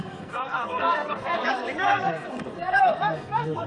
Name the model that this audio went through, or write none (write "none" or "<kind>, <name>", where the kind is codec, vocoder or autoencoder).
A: codec, SNAC